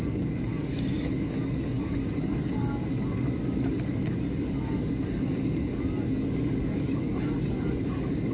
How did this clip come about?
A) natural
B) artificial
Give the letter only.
B